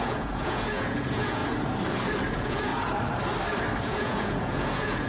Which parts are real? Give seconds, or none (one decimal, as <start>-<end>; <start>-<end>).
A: 1.4-2.3; 2.7-3.8